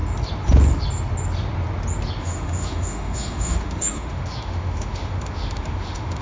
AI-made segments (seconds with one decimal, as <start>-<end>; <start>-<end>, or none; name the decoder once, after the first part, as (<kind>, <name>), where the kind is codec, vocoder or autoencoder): 2.2-6.2 (autoencoder, DAC-VAE)